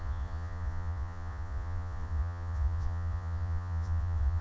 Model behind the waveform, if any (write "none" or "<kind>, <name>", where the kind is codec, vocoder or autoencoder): vocoder, Vocos